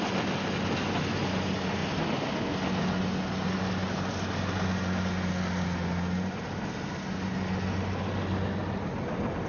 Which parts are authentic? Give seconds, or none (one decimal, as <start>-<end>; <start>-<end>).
0.0-9.5